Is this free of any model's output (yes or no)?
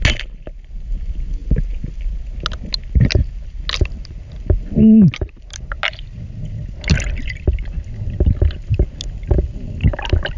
yes